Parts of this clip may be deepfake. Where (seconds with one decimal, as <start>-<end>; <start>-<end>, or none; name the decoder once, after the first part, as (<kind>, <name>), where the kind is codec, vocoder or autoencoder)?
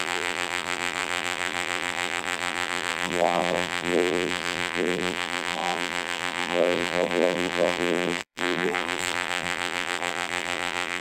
0.0-11.0 (vocoder, BigVGAN v2)